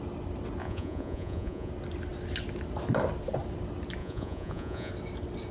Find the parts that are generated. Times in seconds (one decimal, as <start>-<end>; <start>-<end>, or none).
0.6-1.7; 4.0-4.9